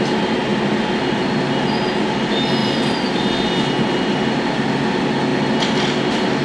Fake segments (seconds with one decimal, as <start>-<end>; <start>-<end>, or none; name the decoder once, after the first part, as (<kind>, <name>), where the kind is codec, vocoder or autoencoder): 2.6-3.5 (vocoder, BigVGAN v2); 5.3-6.4